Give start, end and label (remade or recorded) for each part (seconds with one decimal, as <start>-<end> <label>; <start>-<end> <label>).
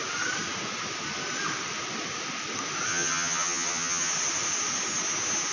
0.0-2.9 recorded; 2.9-4.1 remade; 4.1-5.5 recorded